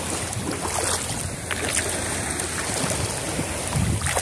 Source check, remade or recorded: recorded